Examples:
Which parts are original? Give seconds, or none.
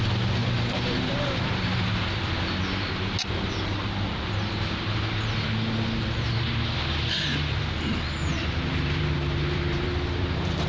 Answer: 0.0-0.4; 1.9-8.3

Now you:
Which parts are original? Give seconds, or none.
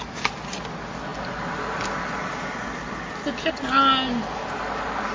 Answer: 0.0-5.1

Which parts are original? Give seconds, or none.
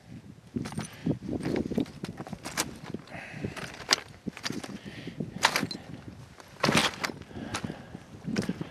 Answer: 0.0-1.0; 3.8-6.8; 7.6-8.7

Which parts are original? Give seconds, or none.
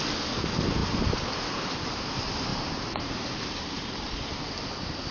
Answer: 0.0-0.8; 2.1-2.5; 4.2-5.1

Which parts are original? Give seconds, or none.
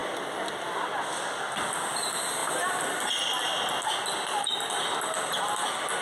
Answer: 1.7-6.0